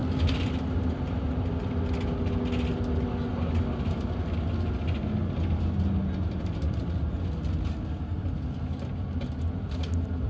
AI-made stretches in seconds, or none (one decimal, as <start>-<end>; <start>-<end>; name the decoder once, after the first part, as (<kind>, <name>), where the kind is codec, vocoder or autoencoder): none